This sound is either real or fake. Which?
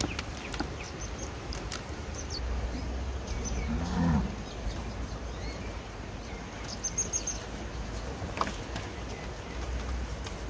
real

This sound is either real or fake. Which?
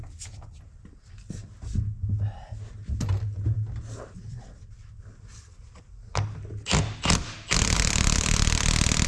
real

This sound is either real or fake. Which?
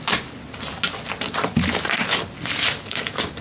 real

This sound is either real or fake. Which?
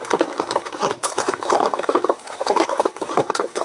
fake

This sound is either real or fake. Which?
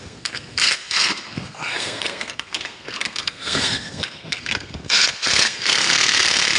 fake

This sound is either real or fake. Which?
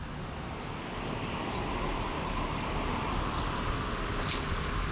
real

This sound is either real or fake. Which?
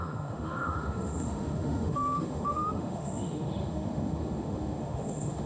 fake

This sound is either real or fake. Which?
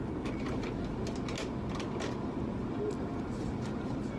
real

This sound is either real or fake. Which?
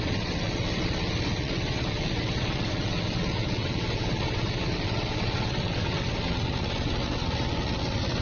fake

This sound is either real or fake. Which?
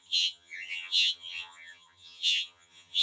fake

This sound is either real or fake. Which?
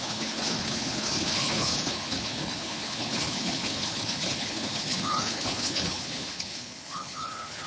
fake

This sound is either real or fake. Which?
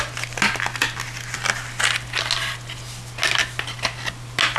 real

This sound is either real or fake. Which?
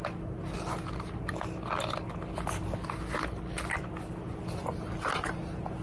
real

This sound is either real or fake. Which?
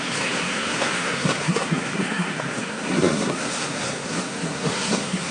fake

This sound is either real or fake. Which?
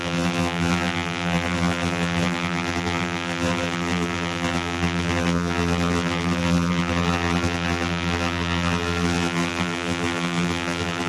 fake